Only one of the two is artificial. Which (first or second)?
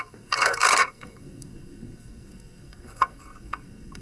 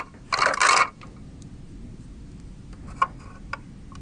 first